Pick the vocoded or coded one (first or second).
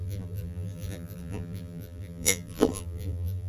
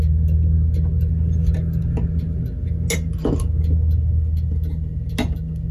first